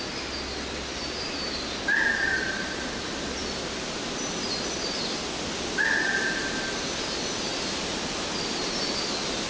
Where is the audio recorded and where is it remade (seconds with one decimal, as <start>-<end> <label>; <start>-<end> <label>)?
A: 0.0-9.5 recorded